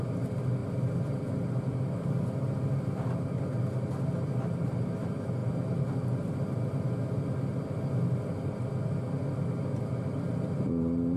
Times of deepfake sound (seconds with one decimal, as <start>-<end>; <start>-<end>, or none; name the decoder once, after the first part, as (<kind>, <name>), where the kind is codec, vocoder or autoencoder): none